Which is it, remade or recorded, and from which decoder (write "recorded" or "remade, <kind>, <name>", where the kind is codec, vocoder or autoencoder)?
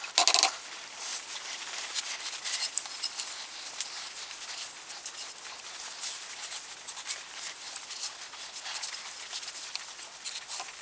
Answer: recorded